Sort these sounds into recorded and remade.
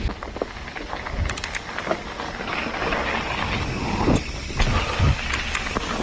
recorded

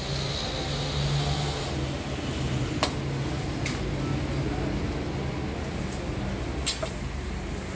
recorded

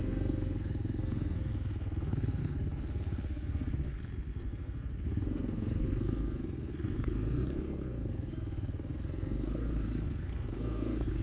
remade